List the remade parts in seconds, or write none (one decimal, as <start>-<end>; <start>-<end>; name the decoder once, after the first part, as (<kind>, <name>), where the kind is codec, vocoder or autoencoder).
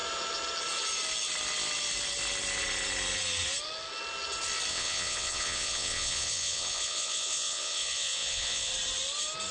4.7-8.7 (vocoder, WaveNeXt)